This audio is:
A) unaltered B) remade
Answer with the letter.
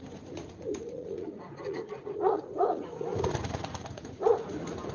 B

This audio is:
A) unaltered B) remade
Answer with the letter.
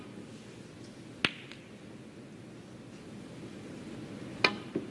A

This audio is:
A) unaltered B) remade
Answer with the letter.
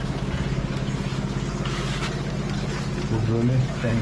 A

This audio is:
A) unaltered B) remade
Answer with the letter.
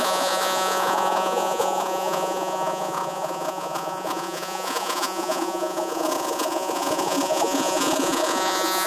B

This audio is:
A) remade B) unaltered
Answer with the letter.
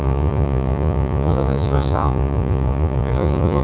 A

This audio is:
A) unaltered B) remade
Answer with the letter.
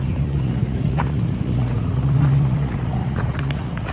B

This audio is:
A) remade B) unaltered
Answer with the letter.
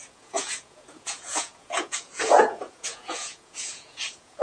A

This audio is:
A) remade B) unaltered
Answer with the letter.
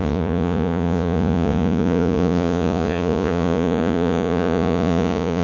A